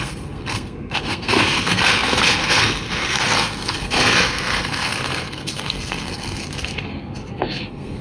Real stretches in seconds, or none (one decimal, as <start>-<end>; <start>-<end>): none